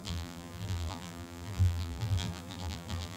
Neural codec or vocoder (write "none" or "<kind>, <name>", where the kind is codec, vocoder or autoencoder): vocoder, BigVGAN v2